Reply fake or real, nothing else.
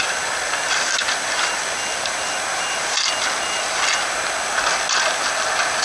real